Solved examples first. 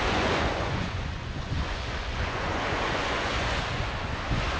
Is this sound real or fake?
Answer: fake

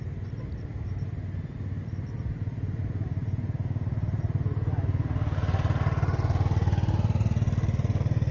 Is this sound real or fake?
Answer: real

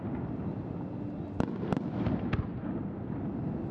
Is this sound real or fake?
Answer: real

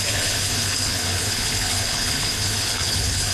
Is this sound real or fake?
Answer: fake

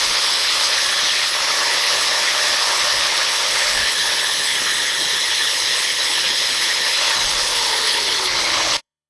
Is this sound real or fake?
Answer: fake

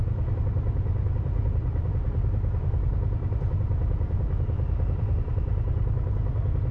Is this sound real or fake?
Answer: real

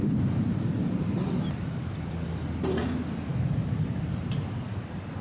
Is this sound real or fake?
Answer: real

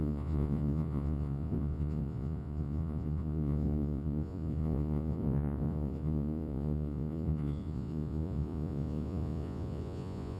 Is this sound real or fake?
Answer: fake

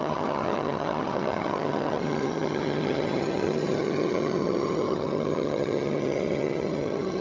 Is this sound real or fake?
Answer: fake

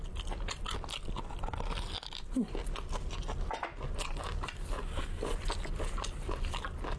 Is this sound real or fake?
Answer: real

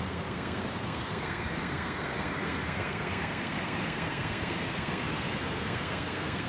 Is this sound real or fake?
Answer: fake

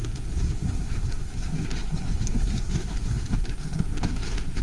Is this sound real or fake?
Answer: fake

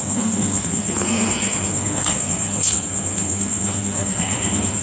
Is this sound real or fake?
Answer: fake